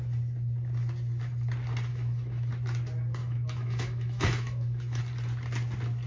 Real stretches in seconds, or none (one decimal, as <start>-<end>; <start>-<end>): 0.0-1.9; 2.5-3.2; 5.0-6.1